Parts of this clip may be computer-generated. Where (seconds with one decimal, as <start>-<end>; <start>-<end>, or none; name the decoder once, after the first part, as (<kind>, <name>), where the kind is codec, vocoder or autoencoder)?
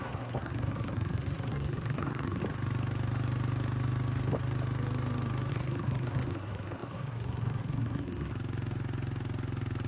0.0-2.4 (codec, SNAC); 5.5-8.3